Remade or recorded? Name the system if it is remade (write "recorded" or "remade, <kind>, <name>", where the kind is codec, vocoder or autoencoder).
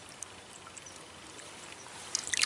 recorded